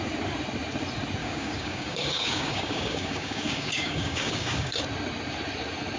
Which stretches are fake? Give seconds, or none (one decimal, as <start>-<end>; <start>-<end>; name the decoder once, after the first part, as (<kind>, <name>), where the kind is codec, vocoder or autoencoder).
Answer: 1.2-4.8 (codec, DAC)